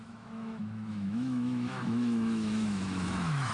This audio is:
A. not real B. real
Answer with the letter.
A